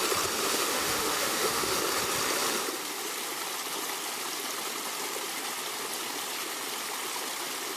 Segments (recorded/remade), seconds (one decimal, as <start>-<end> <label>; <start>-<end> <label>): 0.0-0.4 recorded; 0.4-1.8 remade; 1.8-7.8 recorded